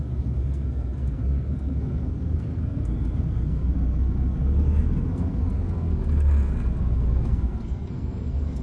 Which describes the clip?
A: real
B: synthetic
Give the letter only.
B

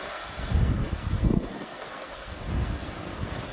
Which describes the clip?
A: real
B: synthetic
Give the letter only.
B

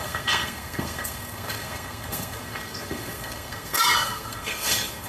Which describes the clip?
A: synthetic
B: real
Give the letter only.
A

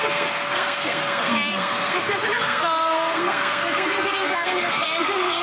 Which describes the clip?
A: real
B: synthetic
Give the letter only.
B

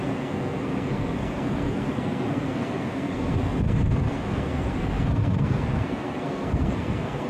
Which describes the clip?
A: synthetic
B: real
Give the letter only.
A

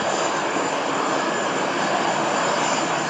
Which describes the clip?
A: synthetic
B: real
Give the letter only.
B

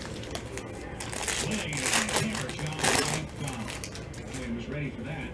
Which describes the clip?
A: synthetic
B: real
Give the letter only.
B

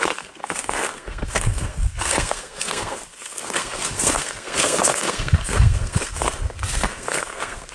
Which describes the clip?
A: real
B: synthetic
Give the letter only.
B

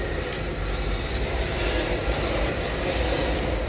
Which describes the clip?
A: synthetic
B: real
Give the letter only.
B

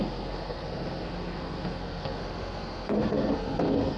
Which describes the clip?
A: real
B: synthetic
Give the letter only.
B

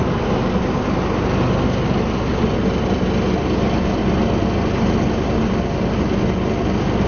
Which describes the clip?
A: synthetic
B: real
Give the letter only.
B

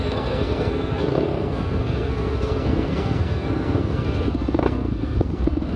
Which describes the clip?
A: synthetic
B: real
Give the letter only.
A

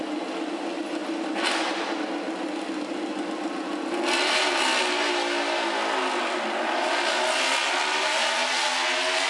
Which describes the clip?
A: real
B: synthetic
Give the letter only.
A